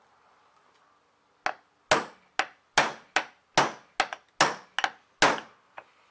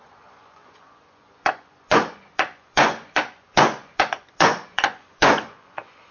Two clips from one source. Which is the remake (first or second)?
second